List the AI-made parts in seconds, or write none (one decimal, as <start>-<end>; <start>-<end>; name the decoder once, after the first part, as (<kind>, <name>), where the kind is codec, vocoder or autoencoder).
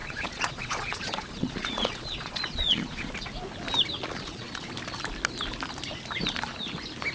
0.0-3.1 (vocoder, Vocos); 4.0-4.7